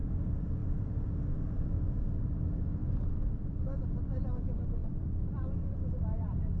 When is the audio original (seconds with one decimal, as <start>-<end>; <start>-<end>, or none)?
0.0-0.6; 1.8-2.8; 3.8-4.8